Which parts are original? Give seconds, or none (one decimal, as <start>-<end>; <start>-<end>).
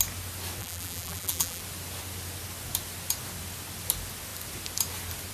0.0-0.6; 1.6-5.3